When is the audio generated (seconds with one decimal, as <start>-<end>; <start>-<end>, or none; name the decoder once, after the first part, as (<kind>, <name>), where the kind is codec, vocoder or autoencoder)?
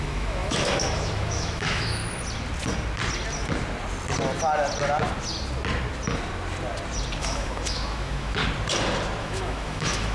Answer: 0.0-2.0 (autoencoder, DAC-VAE); 7.2-8.4; 9.2-10.1